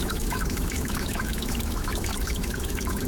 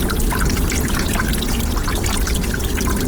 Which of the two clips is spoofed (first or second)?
first